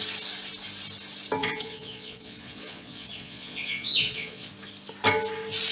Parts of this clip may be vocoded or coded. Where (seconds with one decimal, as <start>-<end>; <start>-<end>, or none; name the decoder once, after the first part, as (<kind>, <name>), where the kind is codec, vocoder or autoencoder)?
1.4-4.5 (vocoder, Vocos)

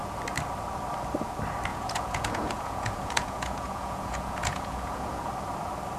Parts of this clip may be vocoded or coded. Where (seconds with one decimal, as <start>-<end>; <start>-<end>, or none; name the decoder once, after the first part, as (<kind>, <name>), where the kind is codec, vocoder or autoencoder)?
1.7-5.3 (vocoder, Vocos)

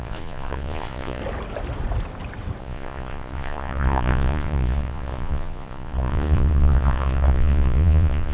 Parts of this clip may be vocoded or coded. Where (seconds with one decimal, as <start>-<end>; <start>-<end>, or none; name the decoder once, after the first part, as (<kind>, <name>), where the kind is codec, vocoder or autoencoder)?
0.0-1.2 (vocoder, Vocos); 2.6-8.3